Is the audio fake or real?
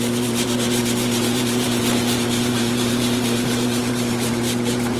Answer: fake